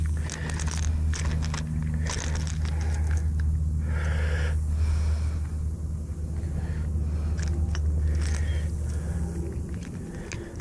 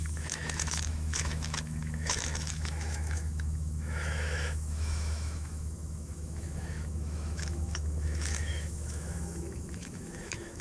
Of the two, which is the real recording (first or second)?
first